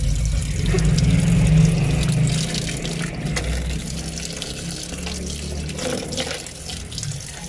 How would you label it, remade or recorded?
recorded